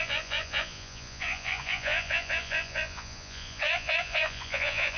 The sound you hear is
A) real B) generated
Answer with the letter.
B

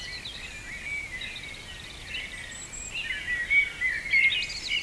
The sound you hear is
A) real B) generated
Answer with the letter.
A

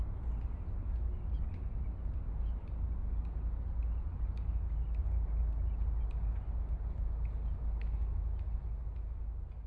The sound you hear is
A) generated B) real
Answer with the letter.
B